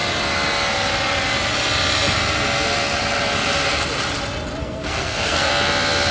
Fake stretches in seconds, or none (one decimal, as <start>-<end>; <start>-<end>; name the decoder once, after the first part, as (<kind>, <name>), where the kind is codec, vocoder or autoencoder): 4.6-5.5 (codec, SNAC)